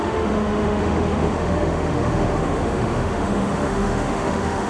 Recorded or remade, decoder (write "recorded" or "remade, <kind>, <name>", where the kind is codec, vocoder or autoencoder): remade, autoencoder, DAC-VAE